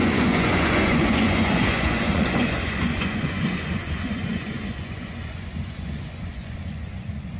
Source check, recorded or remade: remade